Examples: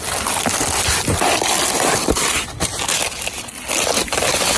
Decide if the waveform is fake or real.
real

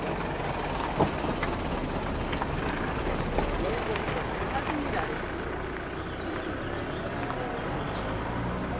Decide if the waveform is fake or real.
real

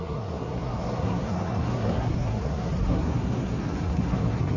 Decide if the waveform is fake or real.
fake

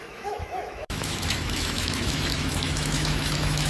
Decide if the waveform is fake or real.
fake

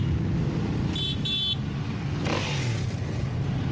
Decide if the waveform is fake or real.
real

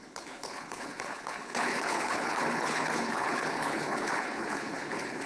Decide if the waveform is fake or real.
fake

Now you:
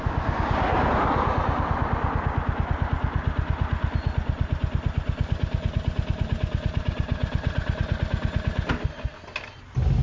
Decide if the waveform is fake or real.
real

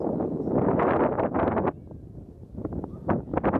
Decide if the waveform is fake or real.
real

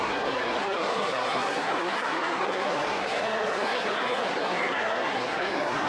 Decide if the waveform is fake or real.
fake